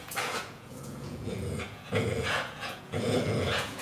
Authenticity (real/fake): fake